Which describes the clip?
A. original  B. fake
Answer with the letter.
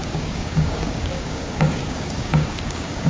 B